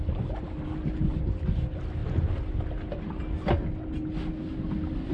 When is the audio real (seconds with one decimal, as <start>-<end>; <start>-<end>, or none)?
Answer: 0.0-5.1